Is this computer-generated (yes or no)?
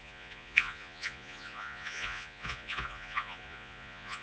yes